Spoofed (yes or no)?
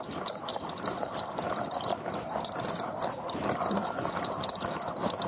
no